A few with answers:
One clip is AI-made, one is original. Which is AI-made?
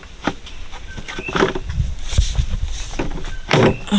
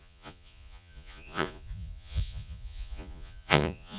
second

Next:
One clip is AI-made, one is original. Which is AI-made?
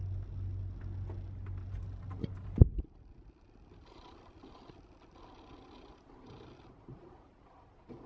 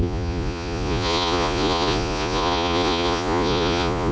second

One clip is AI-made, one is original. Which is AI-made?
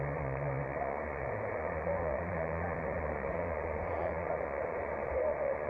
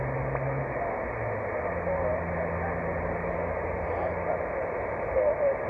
first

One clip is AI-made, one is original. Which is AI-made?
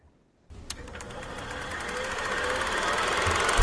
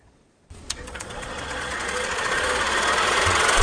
second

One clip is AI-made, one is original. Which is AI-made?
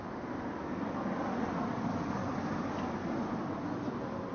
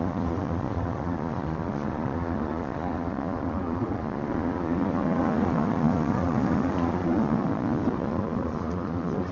second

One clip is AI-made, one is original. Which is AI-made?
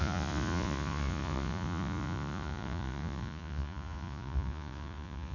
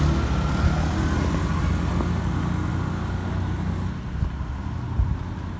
first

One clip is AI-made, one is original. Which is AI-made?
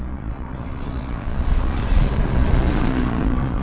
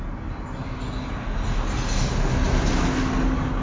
first